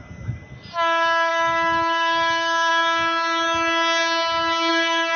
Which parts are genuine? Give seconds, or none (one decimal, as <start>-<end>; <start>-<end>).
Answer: 0.0-1.3; 2.7-4.7